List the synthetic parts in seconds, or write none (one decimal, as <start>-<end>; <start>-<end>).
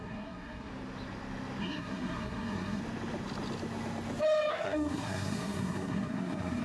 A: 0.0-0.7; 1.6-2.8; 4.5-6.6